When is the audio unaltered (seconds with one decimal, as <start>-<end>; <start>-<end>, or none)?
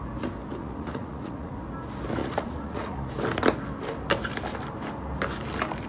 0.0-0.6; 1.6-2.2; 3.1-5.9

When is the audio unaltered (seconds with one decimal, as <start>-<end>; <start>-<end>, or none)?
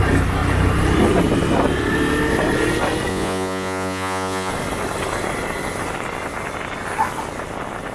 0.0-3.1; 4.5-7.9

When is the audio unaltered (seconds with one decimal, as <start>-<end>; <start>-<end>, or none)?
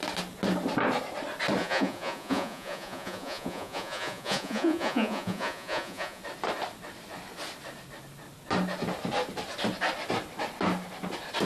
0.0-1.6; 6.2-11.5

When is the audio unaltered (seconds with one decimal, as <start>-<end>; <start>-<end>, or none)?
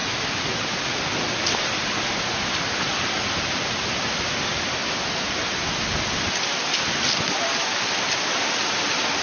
0.0-9.2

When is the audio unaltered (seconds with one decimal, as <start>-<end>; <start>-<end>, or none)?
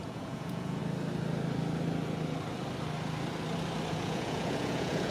0.8-3.9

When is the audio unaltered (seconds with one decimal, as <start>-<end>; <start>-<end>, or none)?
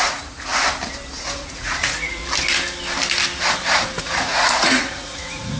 0.5-1.2; 2.2-4.0